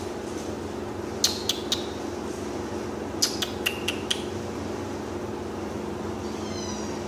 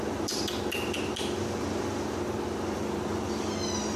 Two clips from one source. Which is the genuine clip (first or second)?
first